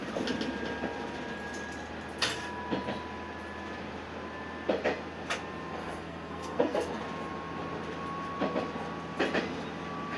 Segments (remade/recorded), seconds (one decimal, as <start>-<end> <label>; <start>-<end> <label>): 0.0-5.7 recorded; 5.7-7.0 remade; 7.0-10.2 recorded